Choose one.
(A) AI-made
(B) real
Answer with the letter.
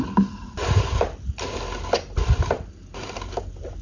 B